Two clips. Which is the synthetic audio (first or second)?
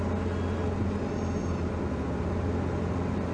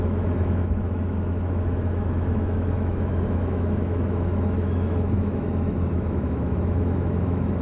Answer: second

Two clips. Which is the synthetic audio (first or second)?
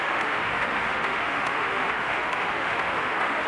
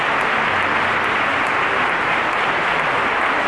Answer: first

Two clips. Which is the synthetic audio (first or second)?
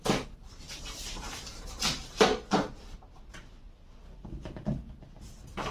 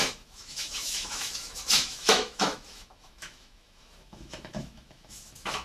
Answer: second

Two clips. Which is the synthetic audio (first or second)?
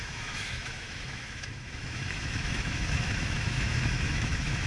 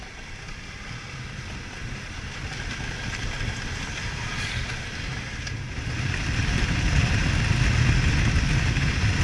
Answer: first